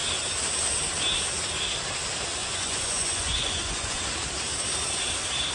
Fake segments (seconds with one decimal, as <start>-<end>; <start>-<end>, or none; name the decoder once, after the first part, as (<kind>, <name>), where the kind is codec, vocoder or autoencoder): 2.4-4.0 (vocoder, Vocos)